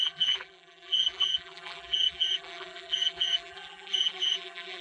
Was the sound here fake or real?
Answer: fake